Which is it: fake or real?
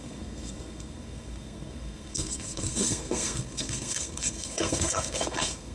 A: fake